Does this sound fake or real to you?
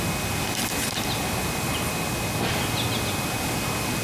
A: real